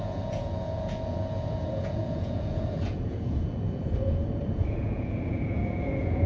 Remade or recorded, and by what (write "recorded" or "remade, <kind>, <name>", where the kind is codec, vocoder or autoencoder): remade, vocoder, Vocos